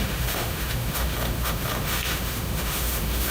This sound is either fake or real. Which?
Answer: fake